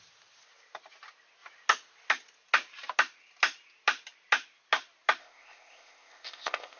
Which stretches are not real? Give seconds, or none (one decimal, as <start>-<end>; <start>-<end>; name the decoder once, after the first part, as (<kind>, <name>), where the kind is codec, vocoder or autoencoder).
5.2-6.8 (codec, ZipCodec)